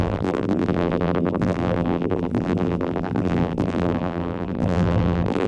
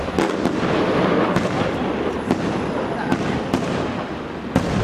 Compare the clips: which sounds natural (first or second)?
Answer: second